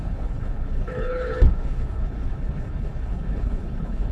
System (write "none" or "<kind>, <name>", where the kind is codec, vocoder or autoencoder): codec, HILCodec